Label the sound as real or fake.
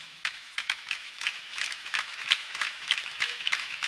fake